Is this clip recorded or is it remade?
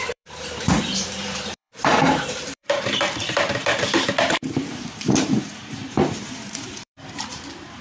remade